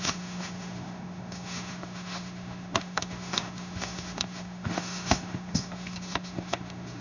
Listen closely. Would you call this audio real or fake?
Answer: fake